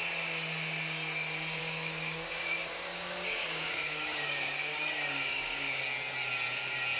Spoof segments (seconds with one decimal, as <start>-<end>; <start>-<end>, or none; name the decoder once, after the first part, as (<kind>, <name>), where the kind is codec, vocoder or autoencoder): 1.6-5.8 (codec, DAC)